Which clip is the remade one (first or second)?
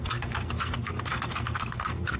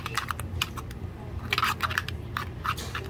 first